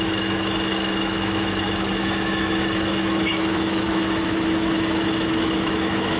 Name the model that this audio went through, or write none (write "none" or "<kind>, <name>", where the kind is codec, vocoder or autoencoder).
autoencoder, DAC-VAE